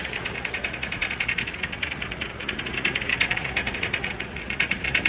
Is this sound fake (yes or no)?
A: yes